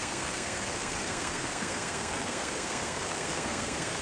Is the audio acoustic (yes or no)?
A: no